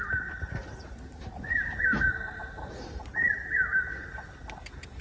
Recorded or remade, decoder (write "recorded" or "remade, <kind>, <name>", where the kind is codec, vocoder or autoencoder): recorded